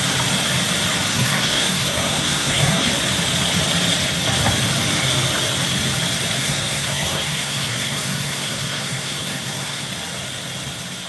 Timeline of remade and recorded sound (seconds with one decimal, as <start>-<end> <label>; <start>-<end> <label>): 0.0-1.1 recorded; 1.1-2.9 remade; 2.9-6.4 recorded; 6.4-9.9 remade; 9.9-11.1 recorded